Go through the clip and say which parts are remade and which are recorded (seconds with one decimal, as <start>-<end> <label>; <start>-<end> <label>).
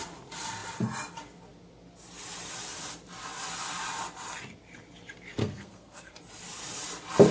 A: 0.0-5.4 recorded; 5.4-6.2 remade; 6.2-7.3 recorded